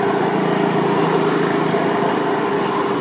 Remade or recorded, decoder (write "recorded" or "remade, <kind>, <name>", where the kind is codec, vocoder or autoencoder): recorded